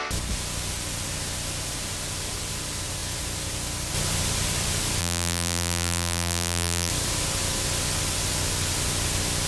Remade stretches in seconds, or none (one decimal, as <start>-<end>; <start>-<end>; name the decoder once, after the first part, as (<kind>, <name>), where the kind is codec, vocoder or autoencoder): 5.0-6.9 (vocoder, BigVGAN v2)